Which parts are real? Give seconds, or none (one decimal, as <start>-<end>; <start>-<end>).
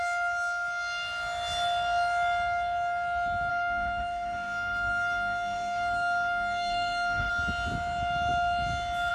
0.0-3.5; 7.3-9.1